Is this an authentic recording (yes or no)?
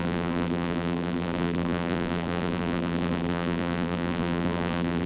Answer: no